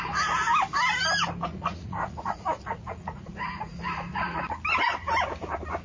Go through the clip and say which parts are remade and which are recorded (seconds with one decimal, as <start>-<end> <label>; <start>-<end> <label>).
0.0-1.5 recorded; 1.5-4.4 remade; 4.4-5.8 recorded